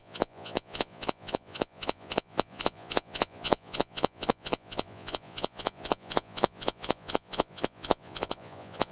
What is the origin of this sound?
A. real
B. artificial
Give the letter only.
B